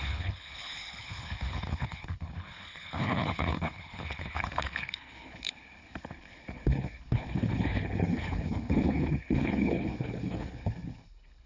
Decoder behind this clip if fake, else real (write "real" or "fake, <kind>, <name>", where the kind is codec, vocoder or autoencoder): fake, codec, HILCodec